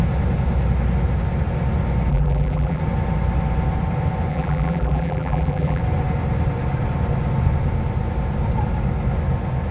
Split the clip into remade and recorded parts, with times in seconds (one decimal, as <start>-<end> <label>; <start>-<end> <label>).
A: 0.0-2.1 recorded; 2.1-2.8 remade; 2.8-4.3 recorded; 4.3-5.8 remade; 5.8-9.7 recorded